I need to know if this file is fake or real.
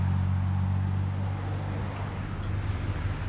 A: real